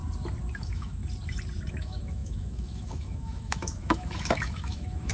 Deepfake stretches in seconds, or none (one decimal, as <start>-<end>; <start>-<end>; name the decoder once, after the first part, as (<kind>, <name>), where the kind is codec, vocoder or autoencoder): 0.6-1.0 (autoencoder, DAC-VAE); 1.7-5.1